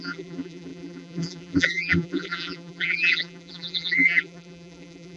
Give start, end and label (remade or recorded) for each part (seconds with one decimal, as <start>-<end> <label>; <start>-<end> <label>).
0.0-5.2 remade